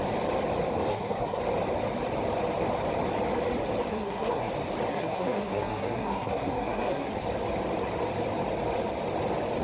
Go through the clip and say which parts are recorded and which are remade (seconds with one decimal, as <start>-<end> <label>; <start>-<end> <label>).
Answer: 0.0-0.9 recorded; 0.9-1.4 remade; 1.4-3.9 recorded; 3.9-4.5 remade; 4.5-4.9 recorded; 4.9-7.1 remade; 7.1-9.6 recorded

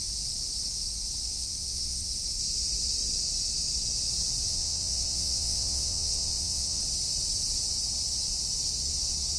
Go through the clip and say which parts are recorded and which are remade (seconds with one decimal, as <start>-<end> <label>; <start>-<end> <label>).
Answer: 0.0-1.3 recorded; 1.3-2.1 remade; 2.1-4.5 recorded; 4.5-6.8 remade; 6.8-9.4 recorded

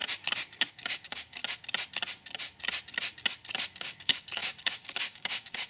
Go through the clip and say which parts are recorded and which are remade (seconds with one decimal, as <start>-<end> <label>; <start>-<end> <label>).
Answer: 0.0-0.7 recorded; 0.7-1.4 remade; 1.4-3.8 recorded; 3.8-5.7 remade

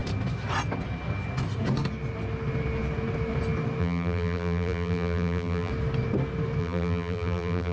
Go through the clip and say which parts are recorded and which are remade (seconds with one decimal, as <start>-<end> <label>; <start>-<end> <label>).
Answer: 0.0-3.8 recorded; 3.8-5.7 remade; 5.7-6.6 recorded; 6.6-7.7 remade

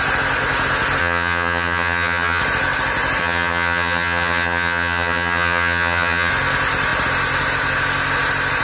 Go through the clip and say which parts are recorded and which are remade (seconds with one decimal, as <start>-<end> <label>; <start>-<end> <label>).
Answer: 0.0-1.0 recorded; 1.0-2.4 remade; 2.4-3.2 recorded; 3.2-6.3 remade; 6.3-8.6 recorded

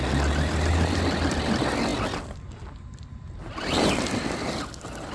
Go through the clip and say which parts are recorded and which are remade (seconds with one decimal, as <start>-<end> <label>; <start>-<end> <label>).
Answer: 0.0-5.1 recorded

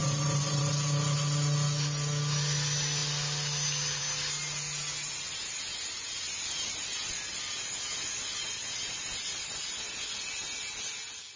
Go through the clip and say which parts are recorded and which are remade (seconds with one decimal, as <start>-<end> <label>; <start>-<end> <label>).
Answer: 0.0-0.6 remade; 0.6-5.3 recorded; 5.3-9.9 remade; 9.9-11.4 recorded